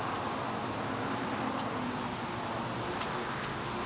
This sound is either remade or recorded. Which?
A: recorded